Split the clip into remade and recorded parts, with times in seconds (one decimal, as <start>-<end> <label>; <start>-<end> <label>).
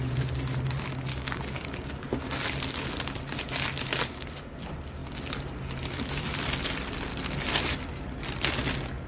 0.0-1.1 recorded; 1.1-2.1 remade; 2.1-9.1 recorded